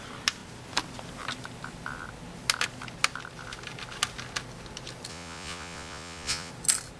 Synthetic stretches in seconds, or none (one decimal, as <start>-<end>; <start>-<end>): 5.1-6.5